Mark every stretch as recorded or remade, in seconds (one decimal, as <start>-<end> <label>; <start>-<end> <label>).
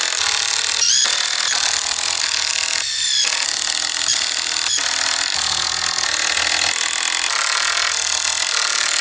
0.0-9.0 recorded